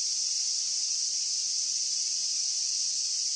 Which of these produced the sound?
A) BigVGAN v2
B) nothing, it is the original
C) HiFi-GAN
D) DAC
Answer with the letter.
B